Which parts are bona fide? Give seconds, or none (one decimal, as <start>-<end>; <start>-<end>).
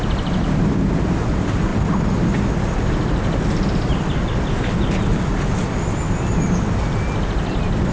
0.0-7.9